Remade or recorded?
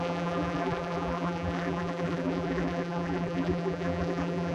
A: remade